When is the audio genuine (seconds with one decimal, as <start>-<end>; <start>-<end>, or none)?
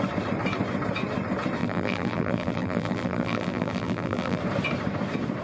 0.0-1.6; 4.4-5.4